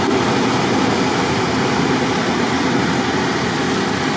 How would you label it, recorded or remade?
recorded